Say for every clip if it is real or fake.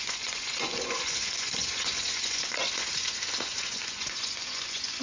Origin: fake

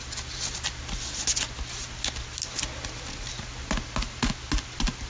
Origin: real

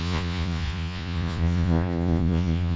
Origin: fake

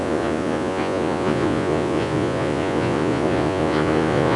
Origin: fake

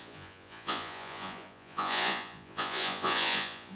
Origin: fake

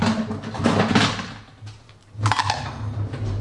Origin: real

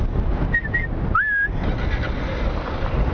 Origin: real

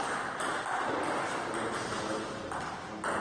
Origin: real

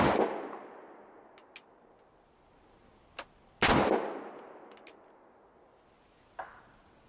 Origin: real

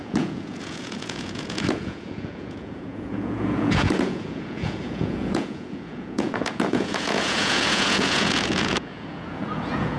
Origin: fake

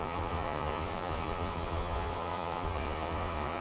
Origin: fake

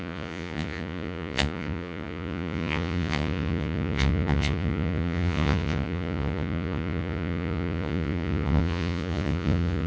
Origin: fake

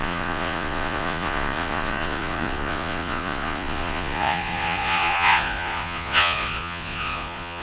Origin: fake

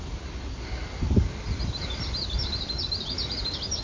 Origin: real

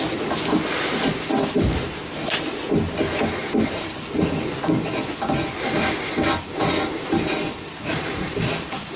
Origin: real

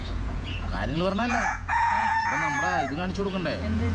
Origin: fake